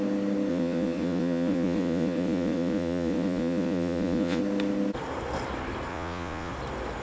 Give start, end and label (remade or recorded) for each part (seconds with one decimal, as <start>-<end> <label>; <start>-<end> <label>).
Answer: 0.0-0.5 recorded; 0.5-4.4 remade; 4.4-5.9 recorded; 5.9-6.5 remade; 6.5-7.0 recorded